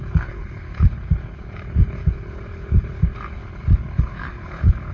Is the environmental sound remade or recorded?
remade